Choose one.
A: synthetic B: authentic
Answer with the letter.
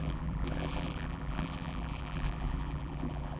A